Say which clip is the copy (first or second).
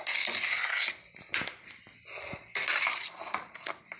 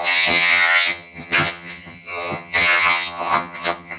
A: second